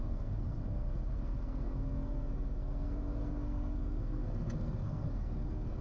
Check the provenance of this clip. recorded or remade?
remade